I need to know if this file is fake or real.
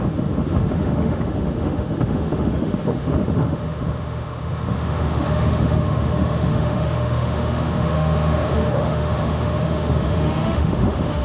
fake